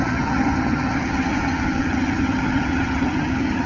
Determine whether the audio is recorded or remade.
remade